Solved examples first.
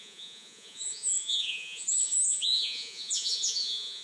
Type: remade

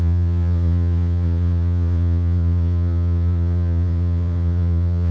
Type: remade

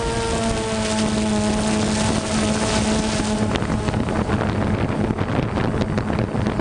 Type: recorded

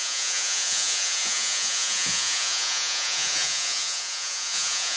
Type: remade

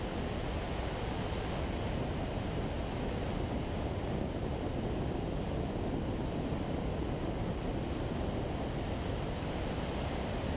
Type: recorded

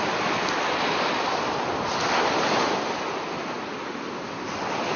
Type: recorded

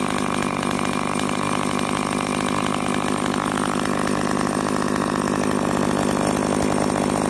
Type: recorded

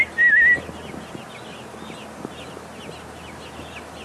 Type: recorded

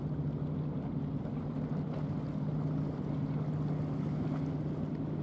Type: recorded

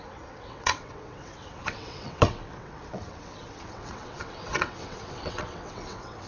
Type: remade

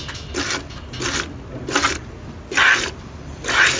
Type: recorded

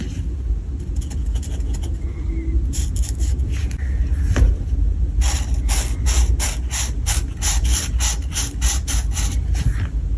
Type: recorded